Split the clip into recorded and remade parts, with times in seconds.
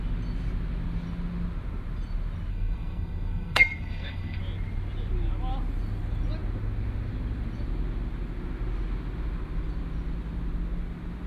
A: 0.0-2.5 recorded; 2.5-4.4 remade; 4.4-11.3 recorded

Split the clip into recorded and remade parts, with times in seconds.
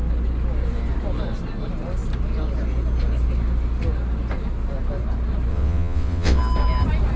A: 0.0-5.5 recorded; 5.5-6.4 remade; 6.4-7.2 recorded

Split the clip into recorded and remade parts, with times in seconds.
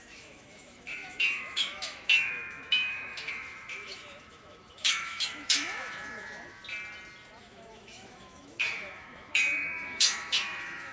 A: 0.0-6.6 remade; 6.6-7.4 recorded; 7.4-10.9 remade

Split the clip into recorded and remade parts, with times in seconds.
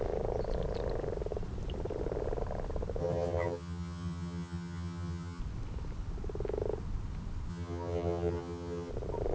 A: 0.0-3.0 recorded; 3.0-5.4 remade; 5.4-7.5 recorded; 7.5-8.9 remade; 8.9-9.3 recorded